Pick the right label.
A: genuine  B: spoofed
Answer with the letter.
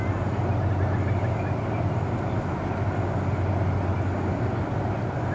A